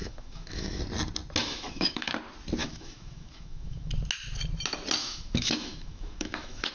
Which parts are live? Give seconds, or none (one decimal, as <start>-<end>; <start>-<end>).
0.8-1.4; 2.1-2.6; 3.9-5.0